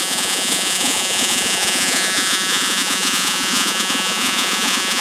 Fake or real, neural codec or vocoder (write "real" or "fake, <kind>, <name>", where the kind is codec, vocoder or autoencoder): fake, vocoder, Vocos